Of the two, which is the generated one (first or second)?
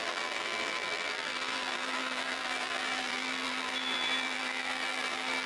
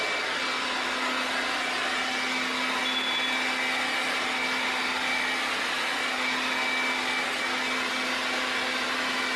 first